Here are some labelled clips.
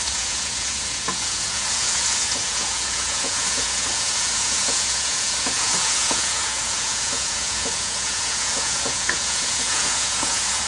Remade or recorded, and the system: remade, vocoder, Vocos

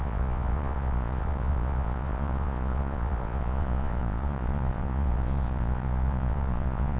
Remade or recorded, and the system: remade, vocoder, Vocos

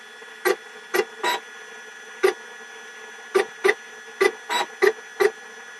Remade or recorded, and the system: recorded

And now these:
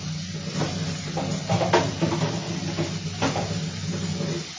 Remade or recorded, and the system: recorded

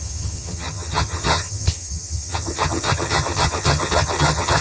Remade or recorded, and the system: remade, vocoder, HiFi-GAN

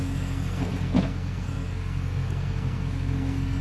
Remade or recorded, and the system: remade, codec, SNAC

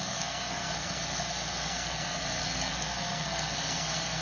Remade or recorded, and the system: remade, codec, SNAC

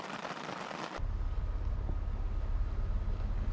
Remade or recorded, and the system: recorded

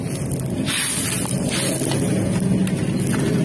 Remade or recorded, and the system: recorded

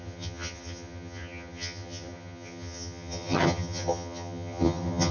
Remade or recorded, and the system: remade, vocoder, HiFi-GAN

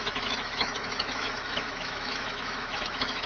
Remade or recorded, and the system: remade, autoencoder, DAC-VAE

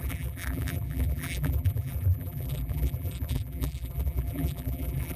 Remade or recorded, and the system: remade, vocoder, BigVGAN v2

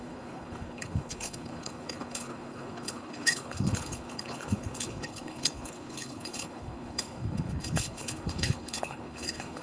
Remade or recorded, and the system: remade, codec, HILCodec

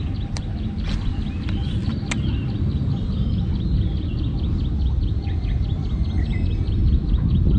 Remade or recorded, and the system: recorded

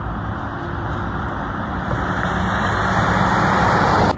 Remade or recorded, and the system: recorded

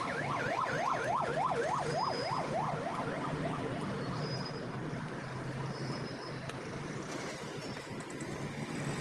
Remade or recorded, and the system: recorded